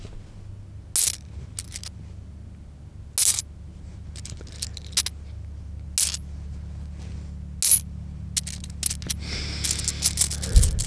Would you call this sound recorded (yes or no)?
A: yes